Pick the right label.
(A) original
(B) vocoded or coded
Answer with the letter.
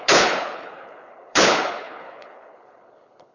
B